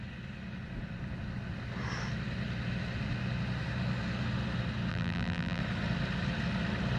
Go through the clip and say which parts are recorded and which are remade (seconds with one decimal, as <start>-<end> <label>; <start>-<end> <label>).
0.0-4.9 recorded; 4.9-5.6 remade; 5.6-7.0 recorded